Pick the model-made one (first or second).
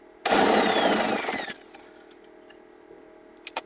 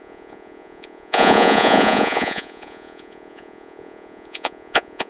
second